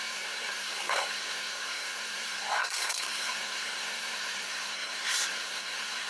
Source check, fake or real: fake